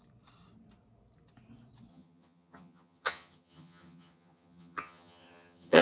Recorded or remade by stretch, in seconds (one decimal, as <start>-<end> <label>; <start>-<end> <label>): 0.0-1.9 recorded; 1.9-5.8 remade